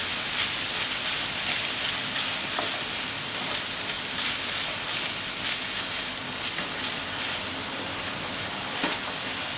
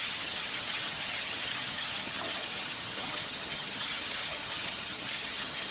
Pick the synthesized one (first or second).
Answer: second